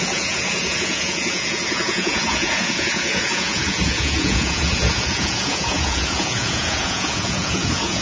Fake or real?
fake